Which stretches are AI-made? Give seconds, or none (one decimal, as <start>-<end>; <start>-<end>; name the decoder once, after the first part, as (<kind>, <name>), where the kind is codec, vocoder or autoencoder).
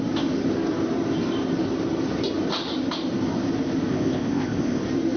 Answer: 3.9-4.8 (codec, ZipCodec)